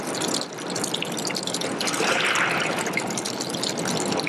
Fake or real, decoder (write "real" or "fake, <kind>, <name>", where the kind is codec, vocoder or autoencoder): real